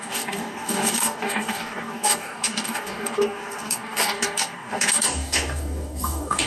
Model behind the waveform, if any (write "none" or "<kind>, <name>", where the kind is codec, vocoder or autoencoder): codec, DAC